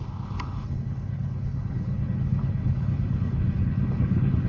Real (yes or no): no